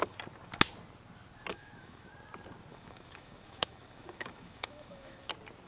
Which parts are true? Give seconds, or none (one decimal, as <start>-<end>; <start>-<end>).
0.0-1.5; 2.1-2.7; 5.3-5.7